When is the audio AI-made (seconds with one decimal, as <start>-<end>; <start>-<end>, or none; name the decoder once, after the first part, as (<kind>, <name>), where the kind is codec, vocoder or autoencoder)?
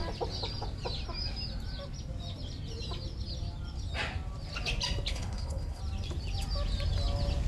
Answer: 5.1-5.8 (codec, HILCodec)